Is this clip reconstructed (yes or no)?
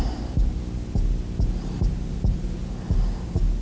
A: no